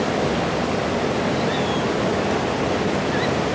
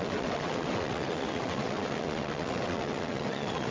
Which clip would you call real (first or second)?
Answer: first